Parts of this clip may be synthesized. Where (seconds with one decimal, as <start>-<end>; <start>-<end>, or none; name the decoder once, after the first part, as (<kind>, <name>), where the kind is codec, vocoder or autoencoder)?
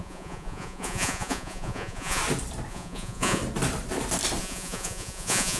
0.0-2.2 (vocoder, Vocos); 2.7-3.4; 4.4-5.6